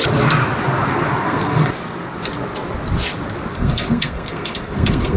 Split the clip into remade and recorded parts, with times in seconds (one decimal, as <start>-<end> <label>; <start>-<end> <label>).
0.0-1.2 recorded; 1.2-1.7 remade; 1.7-3.5 recorded; 3.5-5.2 remade